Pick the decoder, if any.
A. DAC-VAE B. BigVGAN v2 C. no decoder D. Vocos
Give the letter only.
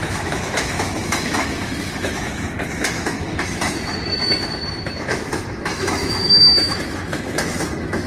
A